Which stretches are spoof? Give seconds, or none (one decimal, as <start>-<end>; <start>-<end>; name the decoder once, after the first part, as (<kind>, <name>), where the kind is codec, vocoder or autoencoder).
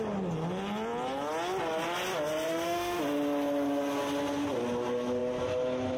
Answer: 2.5-3.0 (autoencoder, DAC-VAE)